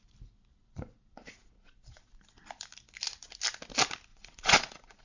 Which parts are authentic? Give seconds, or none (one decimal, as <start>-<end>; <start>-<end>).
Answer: 0.0-0.5; 2.1-4.1